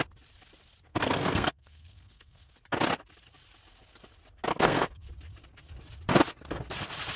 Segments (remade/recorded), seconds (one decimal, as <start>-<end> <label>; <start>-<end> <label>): 0.0-0.9 recorded; 0.9-2.5 remade; 2.5-4.5 recorded; 4.5-5.1 remade; 5.1-7.2 recorded